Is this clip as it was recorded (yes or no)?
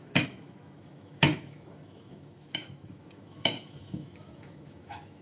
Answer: no